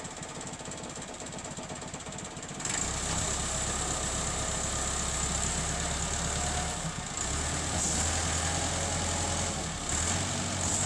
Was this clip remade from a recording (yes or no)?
no